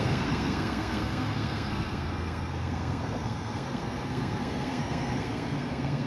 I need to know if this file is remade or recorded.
remade